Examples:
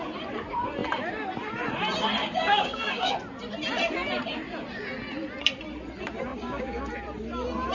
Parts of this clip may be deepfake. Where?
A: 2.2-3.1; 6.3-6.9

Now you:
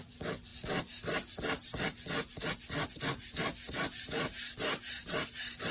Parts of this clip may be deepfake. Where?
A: none

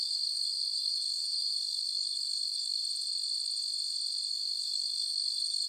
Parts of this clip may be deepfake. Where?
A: 0.0-2.8; 4.3-5.7

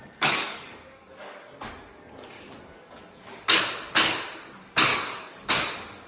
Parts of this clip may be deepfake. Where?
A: 0.0-3.6; 4.9-5.5

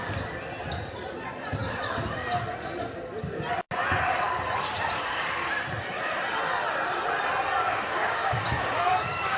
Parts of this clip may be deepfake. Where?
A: 7.6-9.4

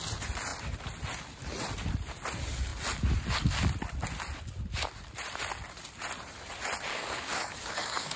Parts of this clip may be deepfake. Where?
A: 6.9-8.2